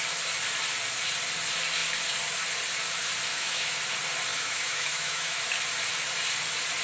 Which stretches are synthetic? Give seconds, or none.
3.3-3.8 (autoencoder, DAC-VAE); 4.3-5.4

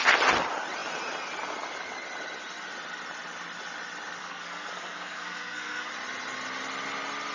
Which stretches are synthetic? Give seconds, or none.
4.2-5.9 (codec, SNAC)